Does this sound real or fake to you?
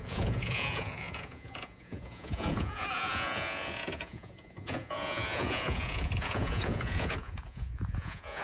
fake